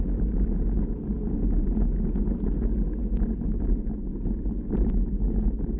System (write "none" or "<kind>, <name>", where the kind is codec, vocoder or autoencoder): none